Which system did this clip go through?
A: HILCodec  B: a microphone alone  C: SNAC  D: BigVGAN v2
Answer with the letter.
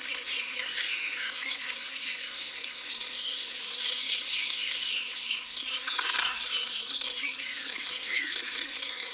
C